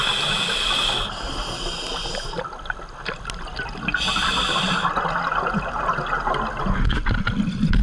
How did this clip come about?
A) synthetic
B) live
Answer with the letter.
B